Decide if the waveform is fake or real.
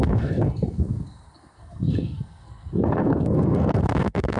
fake